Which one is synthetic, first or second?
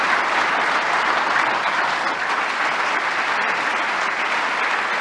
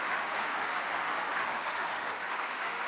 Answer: second